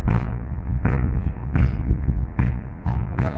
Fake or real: fake